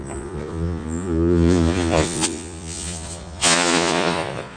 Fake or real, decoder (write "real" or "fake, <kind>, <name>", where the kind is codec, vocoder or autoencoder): fake, vocoder, Vocos